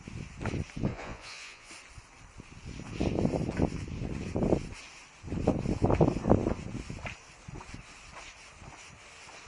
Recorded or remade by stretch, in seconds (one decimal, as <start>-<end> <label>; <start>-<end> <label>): 0.0-0.9 recorded; 0.9-1.7 remade; 1.7-9.5 recorded